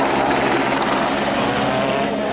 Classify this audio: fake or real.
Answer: real